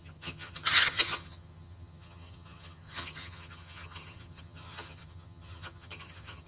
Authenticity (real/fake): fake